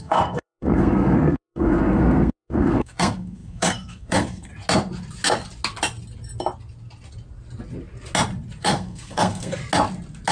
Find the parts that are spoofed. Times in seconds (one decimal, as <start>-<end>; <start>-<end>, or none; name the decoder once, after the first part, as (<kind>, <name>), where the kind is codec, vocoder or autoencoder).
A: 0.0-4.5 (codec, SNAC); 8.6-9.6